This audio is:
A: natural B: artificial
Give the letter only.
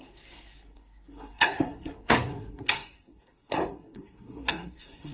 B